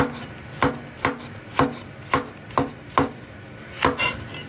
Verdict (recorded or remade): recorded